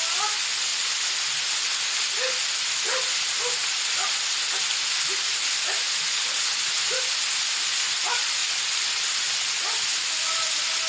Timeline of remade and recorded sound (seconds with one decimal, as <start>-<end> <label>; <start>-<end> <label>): 0.0-10.9 recorded